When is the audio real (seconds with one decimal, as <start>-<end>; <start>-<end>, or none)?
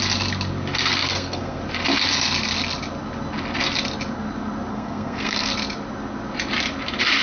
0.0-1.0; 1.6-4.7; 5.5-7.2